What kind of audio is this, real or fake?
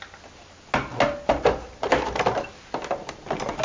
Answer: real